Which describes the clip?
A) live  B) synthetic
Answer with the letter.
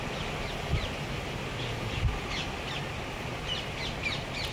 A